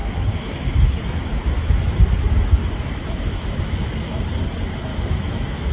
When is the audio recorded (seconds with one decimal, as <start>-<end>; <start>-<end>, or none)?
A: 1.8-2.6; 4.2-4.9